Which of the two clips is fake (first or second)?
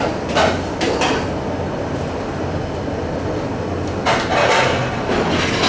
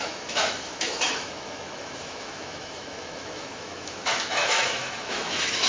second